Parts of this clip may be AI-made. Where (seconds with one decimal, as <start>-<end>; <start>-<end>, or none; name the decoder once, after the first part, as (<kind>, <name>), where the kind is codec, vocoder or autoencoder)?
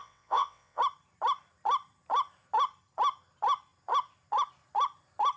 0.0-0.8 (vocoder, WaveNeXt)